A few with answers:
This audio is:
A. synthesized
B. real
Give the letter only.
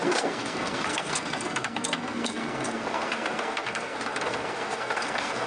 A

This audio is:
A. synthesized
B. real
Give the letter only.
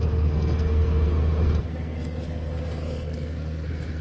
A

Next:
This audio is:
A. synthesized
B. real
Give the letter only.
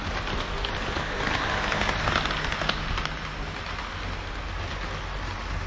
B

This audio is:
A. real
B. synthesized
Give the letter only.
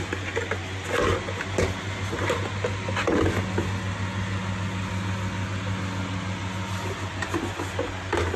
A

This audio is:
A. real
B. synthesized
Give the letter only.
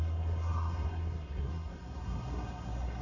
B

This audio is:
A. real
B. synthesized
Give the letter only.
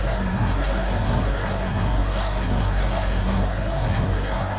B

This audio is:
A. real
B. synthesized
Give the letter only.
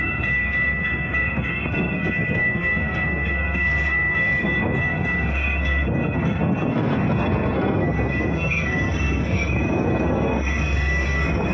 B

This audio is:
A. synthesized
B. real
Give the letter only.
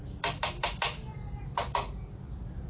B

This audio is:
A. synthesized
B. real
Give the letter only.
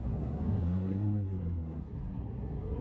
A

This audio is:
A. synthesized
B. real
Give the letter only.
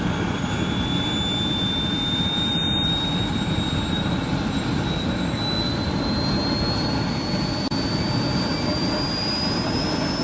B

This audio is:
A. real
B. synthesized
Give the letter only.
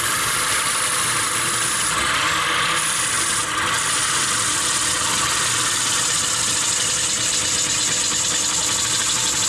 A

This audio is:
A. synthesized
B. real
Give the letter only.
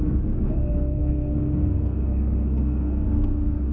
A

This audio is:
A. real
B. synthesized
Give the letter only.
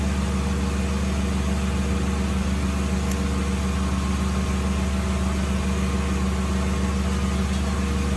A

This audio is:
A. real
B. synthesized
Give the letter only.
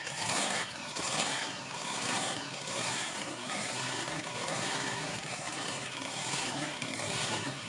B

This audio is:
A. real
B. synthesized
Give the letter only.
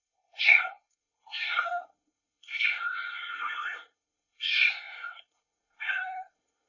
B